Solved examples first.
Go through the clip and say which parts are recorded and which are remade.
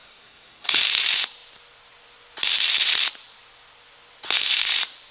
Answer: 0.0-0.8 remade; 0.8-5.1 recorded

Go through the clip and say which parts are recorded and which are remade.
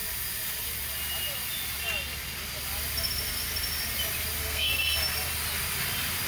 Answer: 0.0-4.4 recorded; 4.4-5.0 remade; 5.0-6.3 recorded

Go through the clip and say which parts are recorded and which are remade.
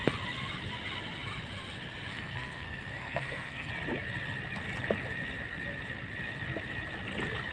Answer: 0.0-2.1 recorded; 2.1-3.7 remade; 3.7-7.5 recorded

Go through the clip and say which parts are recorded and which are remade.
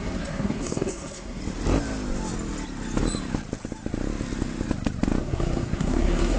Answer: 0.0-1.4 remade; 1.4-5.2 recorded; 5.2-6.4 remade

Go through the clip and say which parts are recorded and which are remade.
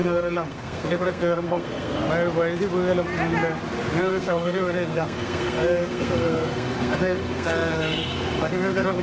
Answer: 0.0-2.0 remade; 2.0-4.0 recorded; 4.0-9.0 remade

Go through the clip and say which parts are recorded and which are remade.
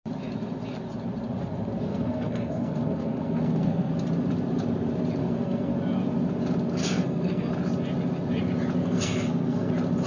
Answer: 0.0-1.9 recorded; 1.9-3.9 remade; 3.9-5.2 recorded; 5.2-5.7 remade; 5.7-6.8 recorded; 6.8-7.5 remade; 7.5-8.8 recorded; 8.8-9.7 remade; 9.7-10.1 recorded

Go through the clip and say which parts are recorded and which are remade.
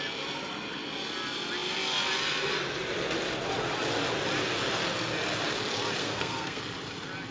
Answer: 0.0-6.0 recorded; 6.0-6.6 remade; 6.6-7.3 recorded